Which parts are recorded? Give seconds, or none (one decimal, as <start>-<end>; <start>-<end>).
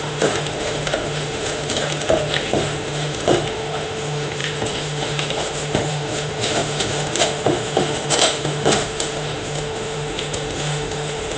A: none